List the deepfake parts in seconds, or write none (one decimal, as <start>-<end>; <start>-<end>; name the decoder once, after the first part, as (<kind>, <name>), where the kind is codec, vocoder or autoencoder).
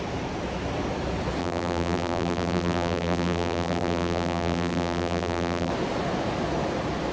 1.4-5.7 (vocoder, BigVGAN v2)